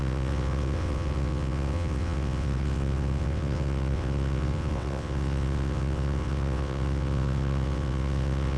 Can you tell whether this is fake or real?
fake